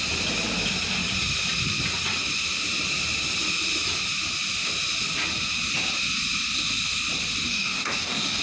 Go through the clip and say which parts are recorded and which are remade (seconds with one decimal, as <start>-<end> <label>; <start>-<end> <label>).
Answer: 0.0-7.5 recorded; 7.5-8.4 remade